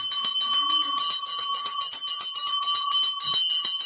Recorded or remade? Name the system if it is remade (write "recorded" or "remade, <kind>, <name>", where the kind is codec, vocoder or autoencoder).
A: remade, vocoder, BigVGAN v2